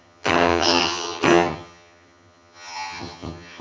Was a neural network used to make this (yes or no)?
yes